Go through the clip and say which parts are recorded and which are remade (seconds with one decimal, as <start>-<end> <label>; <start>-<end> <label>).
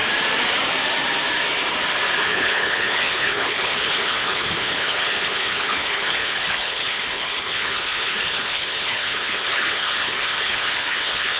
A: 0.0-2.2 recorded; 2.2-11.4 remade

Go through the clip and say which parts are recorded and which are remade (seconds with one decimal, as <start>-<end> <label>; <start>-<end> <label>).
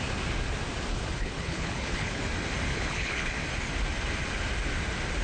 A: 0.0-0.9 recorded; 0.9-2.2 remade; 2.2-2.7 recorded; 2.7-3.3 remade; 3.3-5.2 recorded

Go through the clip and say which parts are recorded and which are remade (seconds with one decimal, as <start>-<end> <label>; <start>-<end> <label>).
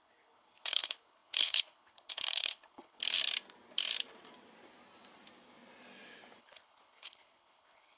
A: 0.0-3.0 remade; 3.0-6.4 recorded; 6.4-8.0 remade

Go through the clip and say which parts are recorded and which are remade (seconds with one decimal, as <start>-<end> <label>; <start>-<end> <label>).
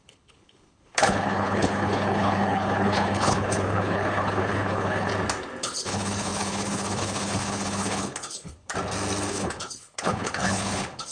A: 0.0-5.1 remade; 5.1-5.6 recorded; 5.6-8.7 remade; 8.7-9.3 recorded; 9.3-11.1 remade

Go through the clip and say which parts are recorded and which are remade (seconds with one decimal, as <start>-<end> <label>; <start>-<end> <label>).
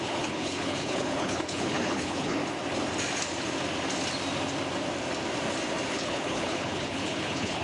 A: 0.0-2.4 remade; 2.4-5.9 recorded; 5.9-7.6 remade